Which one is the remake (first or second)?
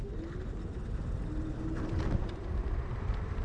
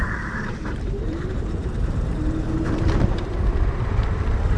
second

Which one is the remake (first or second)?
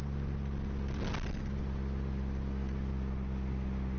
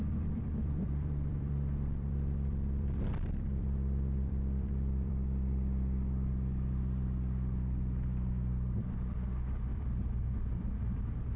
second